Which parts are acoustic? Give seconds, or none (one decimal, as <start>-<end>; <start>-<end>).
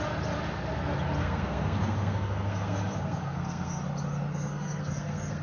0.0-1.2; 3.8-4.3